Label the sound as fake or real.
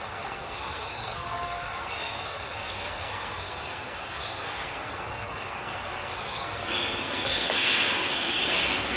fake